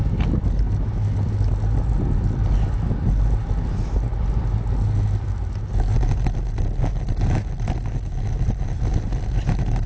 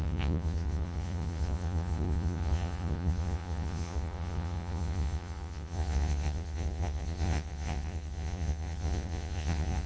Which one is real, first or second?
first